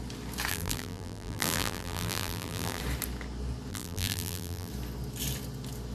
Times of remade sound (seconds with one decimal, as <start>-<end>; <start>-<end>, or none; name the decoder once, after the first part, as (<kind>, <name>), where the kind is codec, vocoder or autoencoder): 0.5-2.8 (vocoder, BigVGAN v2); 3.7-4.7